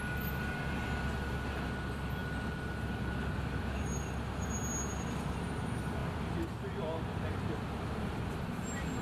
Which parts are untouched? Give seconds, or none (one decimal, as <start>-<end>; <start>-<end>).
0.0-9.0